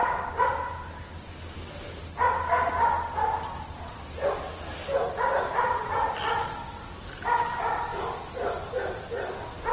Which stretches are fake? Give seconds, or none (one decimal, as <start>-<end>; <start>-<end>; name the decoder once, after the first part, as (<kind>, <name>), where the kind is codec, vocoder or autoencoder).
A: none